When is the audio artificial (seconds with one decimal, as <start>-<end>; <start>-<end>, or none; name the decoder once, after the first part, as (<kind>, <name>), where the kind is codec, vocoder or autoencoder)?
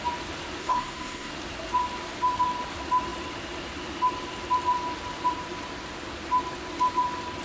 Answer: 0.6-1.3 (codec, SNAC)